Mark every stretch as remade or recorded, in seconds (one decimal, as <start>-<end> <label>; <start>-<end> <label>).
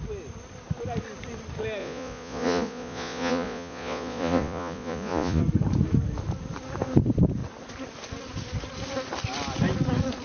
0.0-1.8 recorded; 1.8-5.4 remade; 5.4-10.2 recorded